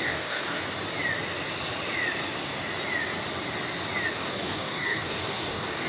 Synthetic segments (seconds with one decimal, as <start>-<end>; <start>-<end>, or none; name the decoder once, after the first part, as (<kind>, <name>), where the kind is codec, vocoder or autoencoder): 0.0-0.6 (codec, DAC); 4.1-5.9